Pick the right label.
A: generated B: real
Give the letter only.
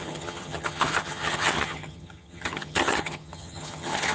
A